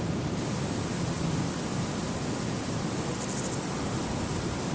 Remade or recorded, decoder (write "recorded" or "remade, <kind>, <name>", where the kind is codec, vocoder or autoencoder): recorded